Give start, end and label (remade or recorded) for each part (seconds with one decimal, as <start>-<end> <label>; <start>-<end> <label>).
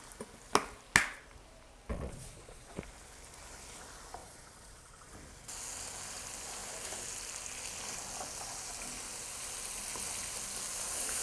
0.0-1.9 recorded; 1.9-2.8 remade; 2.8-4.2 recorded; 4.2-5.1 remade; 5.1-11.2 recorded